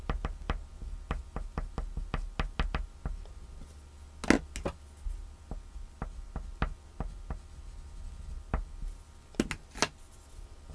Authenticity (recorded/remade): recorded